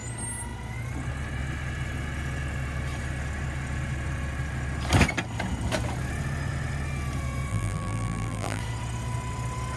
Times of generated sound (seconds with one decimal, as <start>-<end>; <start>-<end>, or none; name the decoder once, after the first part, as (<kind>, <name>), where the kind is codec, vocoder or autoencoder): 7.5-8.6 (vocoder, BigVGAN v2)